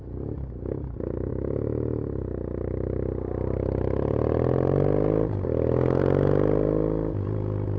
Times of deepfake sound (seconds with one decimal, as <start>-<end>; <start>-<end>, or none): none